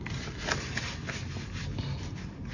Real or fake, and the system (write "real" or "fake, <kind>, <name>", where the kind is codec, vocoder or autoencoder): real